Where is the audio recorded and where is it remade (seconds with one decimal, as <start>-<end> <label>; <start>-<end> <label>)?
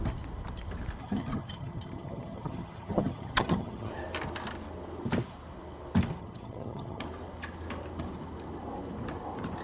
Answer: 0.0-1.0 recorded; 1.0-3.9 remade; 3.9-6.2 recorded; 6.2-7.0 remade; 7.0-9.6 recorded